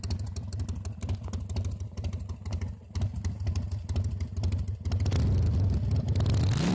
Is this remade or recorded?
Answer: recorded